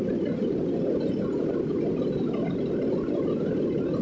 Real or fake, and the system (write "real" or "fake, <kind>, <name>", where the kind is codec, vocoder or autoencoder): real